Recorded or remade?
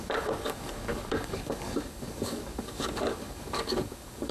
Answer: remade